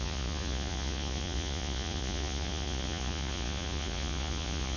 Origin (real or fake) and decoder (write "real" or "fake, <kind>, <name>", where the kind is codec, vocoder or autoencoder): fake, vocoder, Vocos